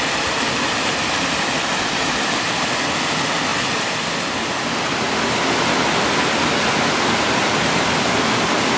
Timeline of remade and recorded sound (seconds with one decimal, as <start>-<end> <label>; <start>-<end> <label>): 0.0-8.8 recorded